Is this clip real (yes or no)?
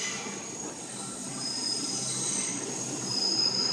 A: yes